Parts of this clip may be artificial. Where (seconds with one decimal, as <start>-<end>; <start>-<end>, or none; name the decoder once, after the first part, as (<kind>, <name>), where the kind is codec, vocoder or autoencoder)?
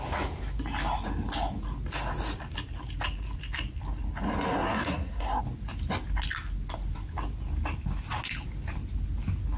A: 4.5-5.4 (codec, SNAC)